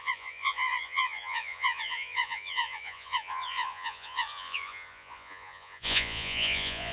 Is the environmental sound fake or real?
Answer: fake